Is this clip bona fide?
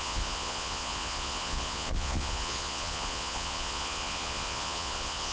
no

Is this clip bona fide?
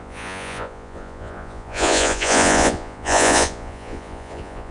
no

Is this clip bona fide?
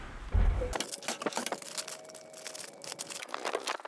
yes